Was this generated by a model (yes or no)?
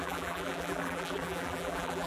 yes